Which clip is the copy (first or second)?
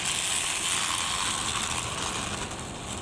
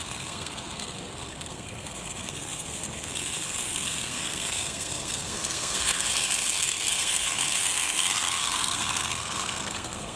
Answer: second